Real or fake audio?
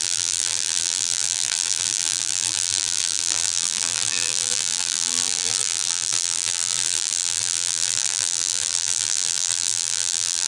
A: fake